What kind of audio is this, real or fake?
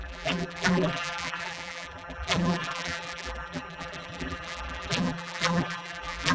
fake